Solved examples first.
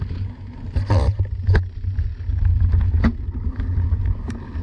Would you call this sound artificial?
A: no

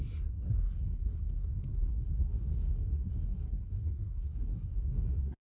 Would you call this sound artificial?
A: yes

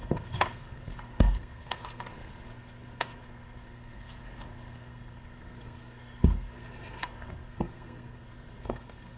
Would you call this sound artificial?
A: yes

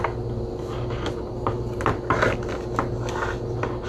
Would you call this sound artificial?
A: no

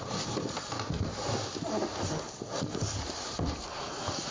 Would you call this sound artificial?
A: no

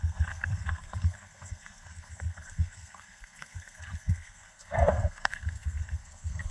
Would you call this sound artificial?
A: yes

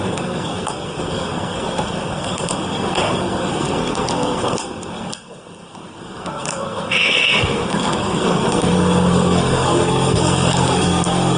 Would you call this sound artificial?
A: yes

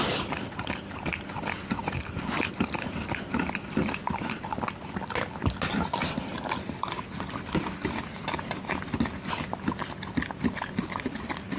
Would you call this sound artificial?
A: no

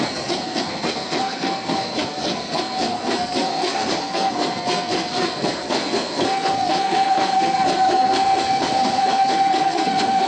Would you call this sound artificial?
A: yes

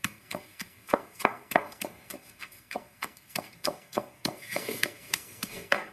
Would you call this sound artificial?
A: yes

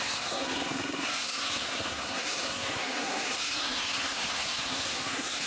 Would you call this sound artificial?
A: yes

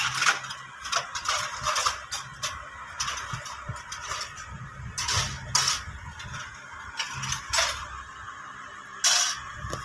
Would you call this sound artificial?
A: no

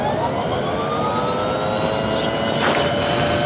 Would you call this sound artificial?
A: no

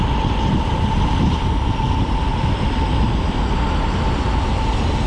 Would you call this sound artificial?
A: no